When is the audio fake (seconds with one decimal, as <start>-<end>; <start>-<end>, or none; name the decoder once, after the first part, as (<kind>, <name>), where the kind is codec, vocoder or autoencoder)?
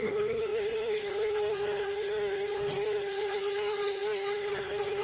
0.0-5.0 (codec, SNAC)